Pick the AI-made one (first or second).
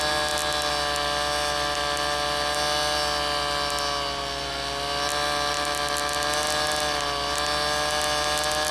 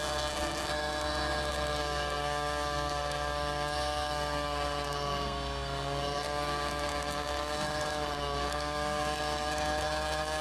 second